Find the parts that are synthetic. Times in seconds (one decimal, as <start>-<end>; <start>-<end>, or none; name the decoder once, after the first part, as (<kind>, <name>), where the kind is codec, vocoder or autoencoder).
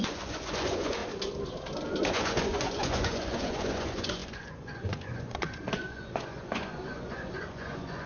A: 0.0-1.0 (vocoder, Vocos); 2.1-8.1